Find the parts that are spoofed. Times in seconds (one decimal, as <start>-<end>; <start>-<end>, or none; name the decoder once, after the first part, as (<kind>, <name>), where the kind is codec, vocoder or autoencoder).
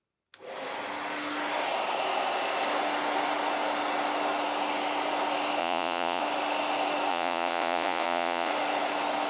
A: 5.6-6.2 (vocoder, Vocos); 7.1-8.5